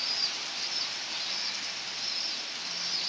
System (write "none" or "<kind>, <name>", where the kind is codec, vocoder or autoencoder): none